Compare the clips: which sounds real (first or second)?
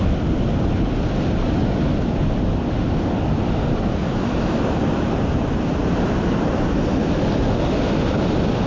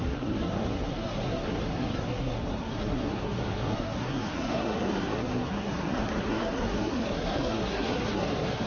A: first